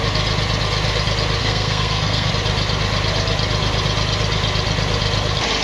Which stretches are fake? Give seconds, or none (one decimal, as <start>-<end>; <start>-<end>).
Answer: 1.4-2.3